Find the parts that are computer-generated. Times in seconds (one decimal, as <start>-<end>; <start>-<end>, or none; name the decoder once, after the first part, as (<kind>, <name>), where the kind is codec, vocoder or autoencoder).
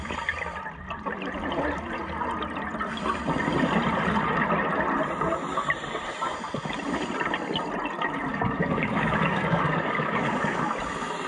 8.3-10.7 (codec, DAC)